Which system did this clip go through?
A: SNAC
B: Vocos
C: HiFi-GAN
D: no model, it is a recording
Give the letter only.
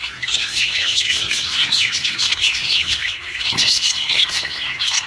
A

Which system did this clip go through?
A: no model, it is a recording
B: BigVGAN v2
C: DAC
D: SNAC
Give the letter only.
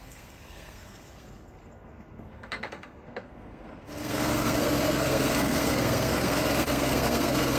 D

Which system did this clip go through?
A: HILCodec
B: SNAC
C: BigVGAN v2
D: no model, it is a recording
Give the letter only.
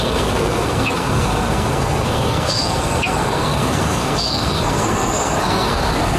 B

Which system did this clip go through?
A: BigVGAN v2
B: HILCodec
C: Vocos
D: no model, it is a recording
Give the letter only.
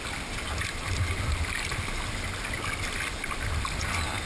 D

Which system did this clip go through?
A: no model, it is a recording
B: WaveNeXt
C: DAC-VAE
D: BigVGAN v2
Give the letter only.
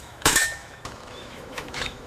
C